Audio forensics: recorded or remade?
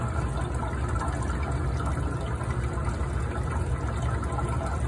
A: recorded